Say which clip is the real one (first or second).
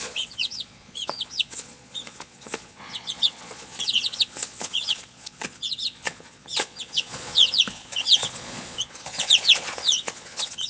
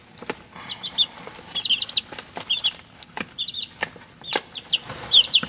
second